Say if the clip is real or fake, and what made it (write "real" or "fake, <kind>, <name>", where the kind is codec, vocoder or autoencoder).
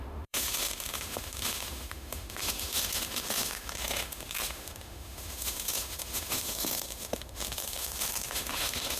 fake, autoencoder, DAC-VAE